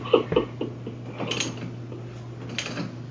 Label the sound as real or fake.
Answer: real